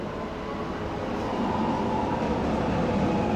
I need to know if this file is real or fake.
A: real